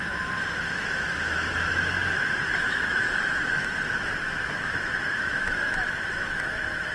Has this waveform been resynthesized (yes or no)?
yes